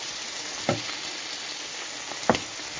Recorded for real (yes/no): yes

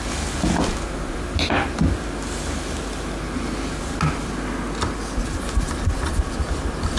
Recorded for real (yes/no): yes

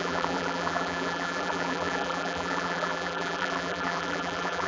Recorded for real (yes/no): no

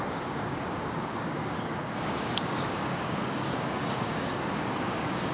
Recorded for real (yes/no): no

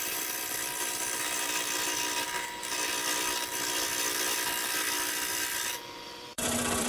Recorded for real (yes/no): no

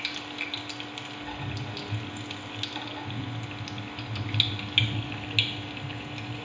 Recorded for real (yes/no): yes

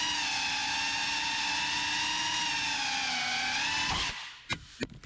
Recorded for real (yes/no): yes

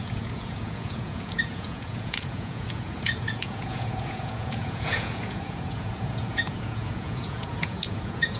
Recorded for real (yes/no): no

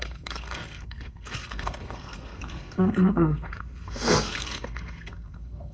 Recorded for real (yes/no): no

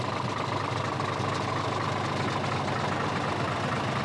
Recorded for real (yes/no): yes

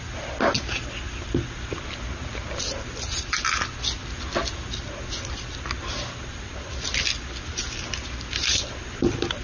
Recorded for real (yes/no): yes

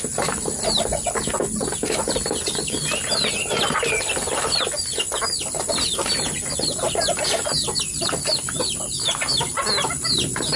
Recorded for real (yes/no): yes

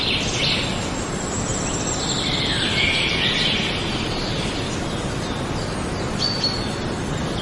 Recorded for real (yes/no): yes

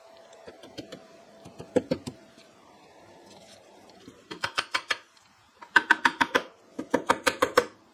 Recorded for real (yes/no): no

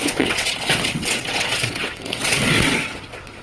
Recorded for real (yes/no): no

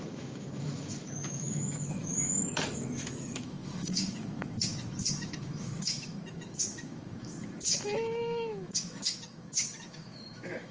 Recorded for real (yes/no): no